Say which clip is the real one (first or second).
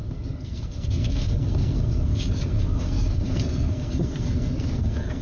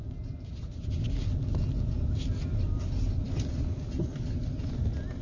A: second